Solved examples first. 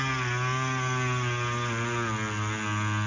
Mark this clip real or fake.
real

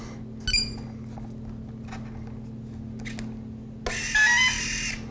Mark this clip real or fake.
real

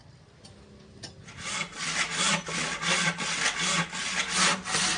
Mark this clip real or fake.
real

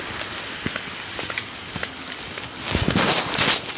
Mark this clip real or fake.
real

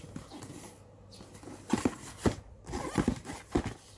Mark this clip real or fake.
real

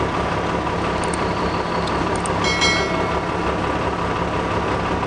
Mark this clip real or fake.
real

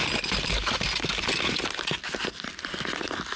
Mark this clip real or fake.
real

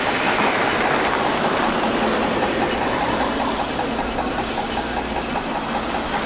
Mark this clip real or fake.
real